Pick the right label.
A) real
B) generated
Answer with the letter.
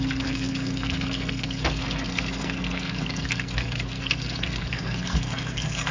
B